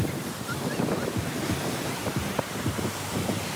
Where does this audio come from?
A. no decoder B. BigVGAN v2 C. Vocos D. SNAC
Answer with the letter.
B